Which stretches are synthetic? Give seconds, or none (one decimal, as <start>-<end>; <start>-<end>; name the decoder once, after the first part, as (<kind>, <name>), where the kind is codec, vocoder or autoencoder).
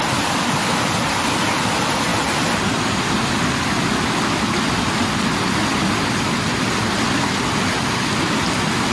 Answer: none